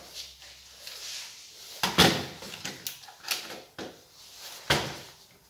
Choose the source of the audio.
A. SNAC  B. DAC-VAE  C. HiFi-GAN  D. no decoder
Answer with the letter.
D